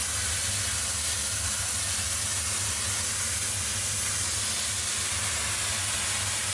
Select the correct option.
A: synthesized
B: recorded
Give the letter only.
B